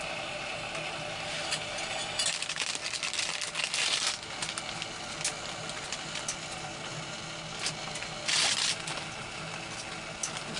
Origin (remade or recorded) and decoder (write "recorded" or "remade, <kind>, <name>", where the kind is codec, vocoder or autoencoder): recorded